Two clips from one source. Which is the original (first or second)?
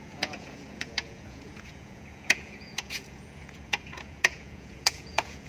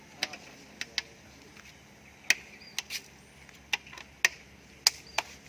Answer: second